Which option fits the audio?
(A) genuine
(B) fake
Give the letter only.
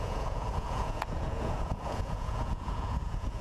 B